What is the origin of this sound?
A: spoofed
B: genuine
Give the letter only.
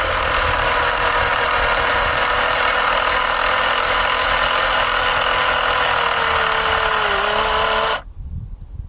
B